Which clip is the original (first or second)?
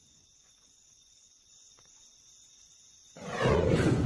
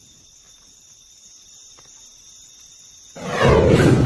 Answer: second